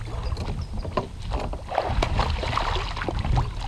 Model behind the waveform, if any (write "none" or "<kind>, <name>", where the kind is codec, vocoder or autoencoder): none